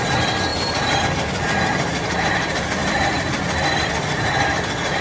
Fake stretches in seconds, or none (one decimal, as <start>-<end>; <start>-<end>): 0.0-5.0